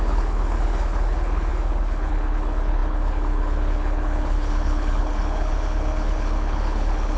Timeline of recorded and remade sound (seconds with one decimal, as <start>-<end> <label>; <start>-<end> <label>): 0.0-7.2 remade